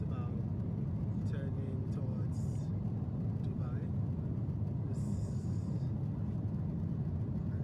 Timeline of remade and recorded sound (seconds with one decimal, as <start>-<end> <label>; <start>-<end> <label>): 0.0-5.0 recorded; 5.0-5.6 remade; 5.6-7.6 recorded